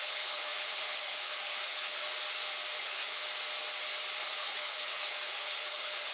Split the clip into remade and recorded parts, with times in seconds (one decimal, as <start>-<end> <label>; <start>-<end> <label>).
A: 0.0-2.1 remade; 2.1-2.8 recorded; 2.8-3.2 remade; 3.2-4.2 recorded; 4.2-6.1 remade